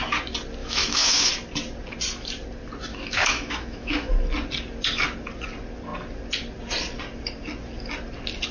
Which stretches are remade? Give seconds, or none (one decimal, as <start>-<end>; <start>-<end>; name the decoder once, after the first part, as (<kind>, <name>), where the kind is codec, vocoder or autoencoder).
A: 0.6-1.3 (autoencoder, DAC-VAE); 2.9-4.1